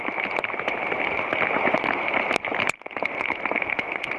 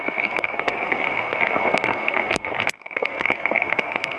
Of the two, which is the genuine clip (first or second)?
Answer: first